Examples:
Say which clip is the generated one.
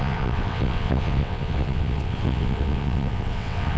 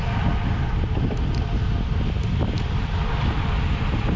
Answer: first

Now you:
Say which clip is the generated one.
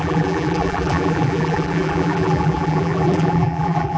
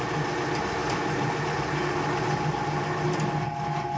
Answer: first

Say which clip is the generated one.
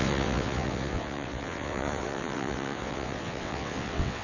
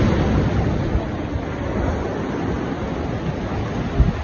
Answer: first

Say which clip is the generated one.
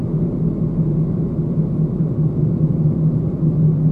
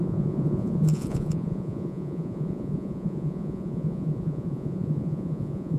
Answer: second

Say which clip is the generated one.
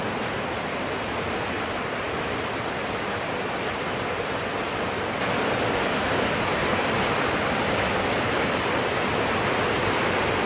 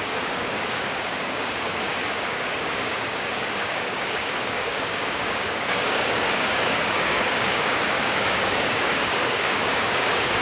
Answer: second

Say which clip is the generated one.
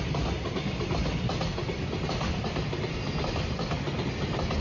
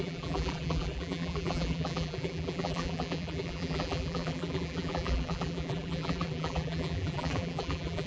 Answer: second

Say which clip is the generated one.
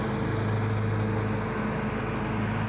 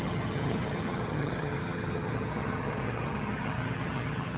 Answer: second